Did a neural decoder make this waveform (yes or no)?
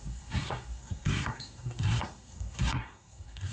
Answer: yes